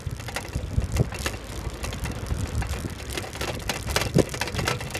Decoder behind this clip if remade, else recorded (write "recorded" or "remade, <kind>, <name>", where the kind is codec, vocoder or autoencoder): recorded